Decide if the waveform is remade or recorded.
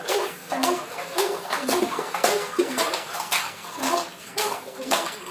remade